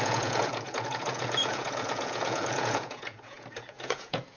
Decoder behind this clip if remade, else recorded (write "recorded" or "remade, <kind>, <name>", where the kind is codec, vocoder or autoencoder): remade, vocoder, Vocos